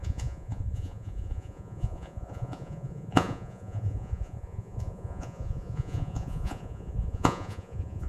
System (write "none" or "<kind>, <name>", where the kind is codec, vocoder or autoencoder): vocoder, Vocos